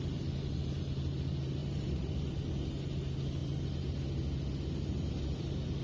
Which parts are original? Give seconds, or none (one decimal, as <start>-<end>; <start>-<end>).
0.0-1.6; 2.3-5.8